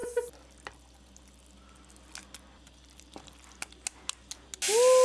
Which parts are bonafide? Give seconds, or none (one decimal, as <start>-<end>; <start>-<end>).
0.0-5.0